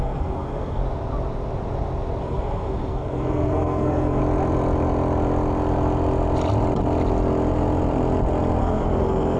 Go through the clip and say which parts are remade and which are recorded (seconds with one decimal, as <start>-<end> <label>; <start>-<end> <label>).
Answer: 0.0-0.8 remade; 0.8-2.2 recorded; 2.2-4.2 remade; 4.2-8.6 recorded; 8.6-9.4 remade